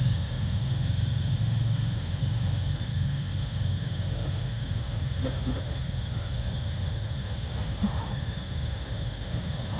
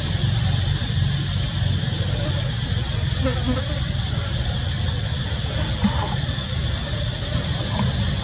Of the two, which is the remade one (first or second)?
first